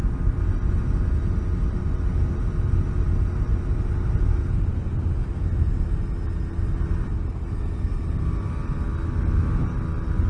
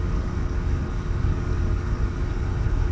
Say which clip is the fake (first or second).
second